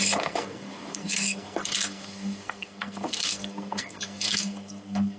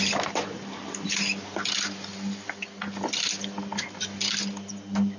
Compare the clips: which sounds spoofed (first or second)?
first